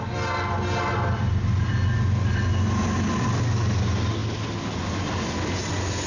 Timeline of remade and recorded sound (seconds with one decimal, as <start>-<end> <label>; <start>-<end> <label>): 0.0-6.1 recorded